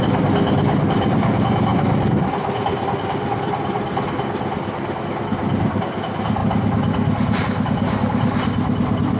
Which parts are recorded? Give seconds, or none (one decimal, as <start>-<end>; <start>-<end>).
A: 0.0-9.2